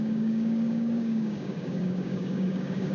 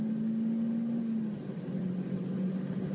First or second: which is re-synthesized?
first